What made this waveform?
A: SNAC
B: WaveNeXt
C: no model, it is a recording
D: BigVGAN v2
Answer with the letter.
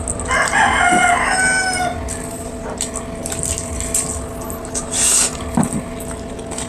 C